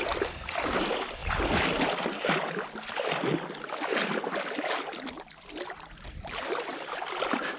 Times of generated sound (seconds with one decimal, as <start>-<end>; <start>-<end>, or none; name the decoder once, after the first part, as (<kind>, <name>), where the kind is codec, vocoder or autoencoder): none